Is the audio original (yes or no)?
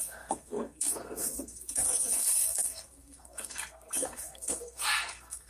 no